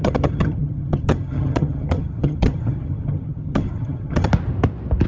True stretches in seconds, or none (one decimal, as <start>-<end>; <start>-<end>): 4.3-5.1